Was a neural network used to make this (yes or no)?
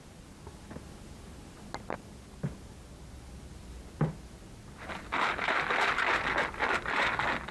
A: no